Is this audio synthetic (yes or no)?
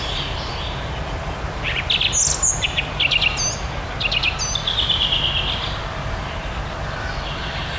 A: no